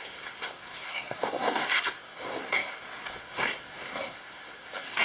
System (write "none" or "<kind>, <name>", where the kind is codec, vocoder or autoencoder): codec, SNAC